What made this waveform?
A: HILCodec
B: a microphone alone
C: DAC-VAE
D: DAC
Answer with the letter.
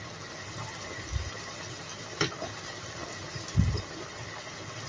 B